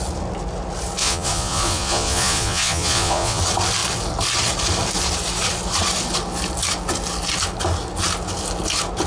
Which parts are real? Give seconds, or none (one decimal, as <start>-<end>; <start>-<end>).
0.0-1.0; 3.4-9.1